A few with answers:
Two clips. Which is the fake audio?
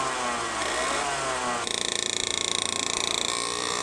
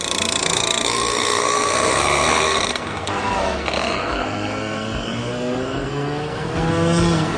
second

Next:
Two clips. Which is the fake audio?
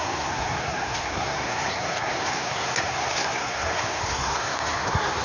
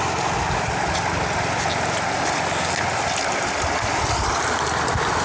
first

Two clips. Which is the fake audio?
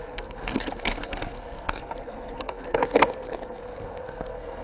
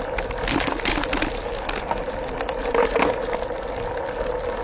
first